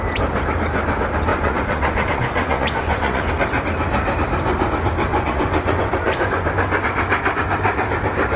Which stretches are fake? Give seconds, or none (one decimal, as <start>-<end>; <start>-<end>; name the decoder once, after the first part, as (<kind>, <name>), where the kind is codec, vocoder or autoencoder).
1.3-3.3 (vocoder, Vocos); 5.1-6.5

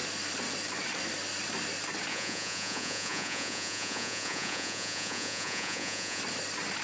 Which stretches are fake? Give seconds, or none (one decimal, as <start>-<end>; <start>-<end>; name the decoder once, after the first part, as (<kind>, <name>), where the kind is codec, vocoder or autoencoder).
2.1-6.2 (vocoder, Vocos)